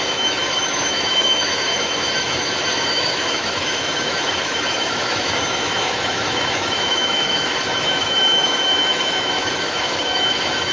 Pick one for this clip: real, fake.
fake